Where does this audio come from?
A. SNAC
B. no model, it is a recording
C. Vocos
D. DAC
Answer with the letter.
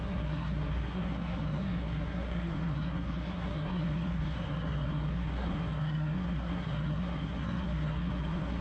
A